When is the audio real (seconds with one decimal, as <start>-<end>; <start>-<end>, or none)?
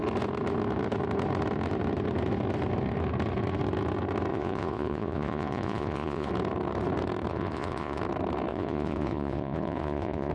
0.0-4.3; 6.3-7.3; 8.0-8.5